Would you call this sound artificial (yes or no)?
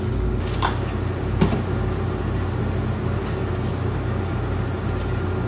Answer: no